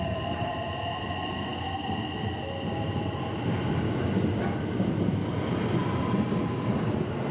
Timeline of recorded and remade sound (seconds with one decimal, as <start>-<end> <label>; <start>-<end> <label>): 0.0-7.3 recorded